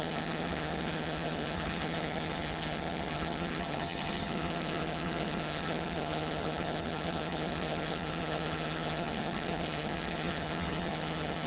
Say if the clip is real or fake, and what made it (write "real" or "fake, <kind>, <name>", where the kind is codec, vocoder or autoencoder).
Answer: fake, vocoder, HiFi-GAN